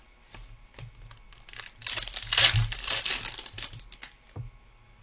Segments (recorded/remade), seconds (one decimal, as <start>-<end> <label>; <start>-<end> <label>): 0.0-5.0 recorded